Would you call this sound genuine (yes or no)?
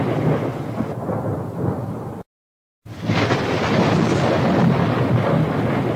yes